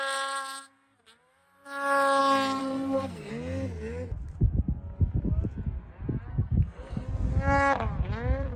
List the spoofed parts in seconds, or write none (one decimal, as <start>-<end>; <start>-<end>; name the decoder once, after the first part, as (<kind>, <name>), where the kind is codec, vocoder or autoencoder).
2.6-3.3 (codec, SNAC); 6.3-7.1